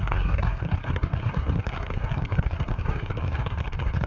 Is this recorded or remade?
remade